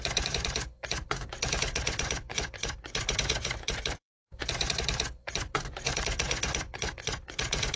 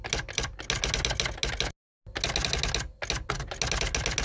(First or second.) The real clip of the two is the second